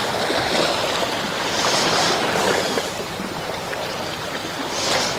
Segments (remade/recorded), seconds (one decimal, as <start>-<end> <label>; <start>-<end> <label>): 0.0-5.2 recorded